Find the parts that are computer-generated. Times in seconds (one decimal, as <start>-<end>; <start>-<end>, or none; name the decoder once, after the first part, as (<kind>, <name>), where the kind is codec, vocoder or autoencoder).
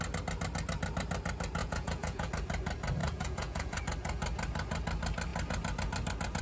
1.6-2.3 (vocoder, Vocos); 3.0-3.8